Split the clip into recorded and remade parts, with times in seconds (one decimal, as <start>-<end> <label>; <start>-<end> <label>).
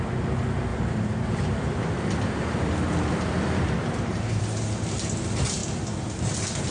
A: 0.0-0.7 recorded; 0.7-4.4 remade; 4.4-6.7 recorded